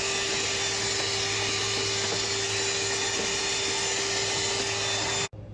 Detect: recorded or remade recorded